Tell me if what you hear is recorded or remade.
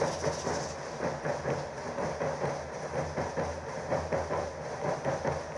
recorded